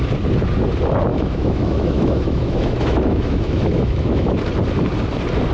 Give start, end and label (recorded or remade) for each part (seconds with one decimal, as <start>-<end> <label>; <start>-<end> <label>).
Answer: 0.0-1.1 recorded; 1.1-4.4 remade; 4.4-5.5 recorded